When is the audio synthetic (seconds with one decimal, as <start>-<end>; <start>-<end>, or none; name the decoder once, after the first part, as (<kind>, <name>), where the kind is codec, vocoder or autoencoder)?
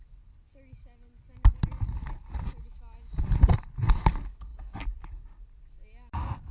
none